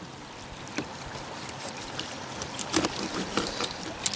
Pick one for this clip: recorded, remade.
recorded